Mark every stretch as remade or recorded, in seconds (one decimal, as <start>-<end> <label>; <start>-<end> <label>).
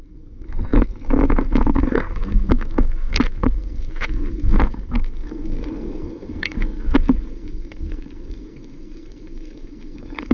0.0-10.3 remade